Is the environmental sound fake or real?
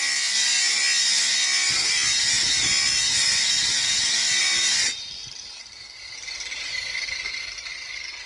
real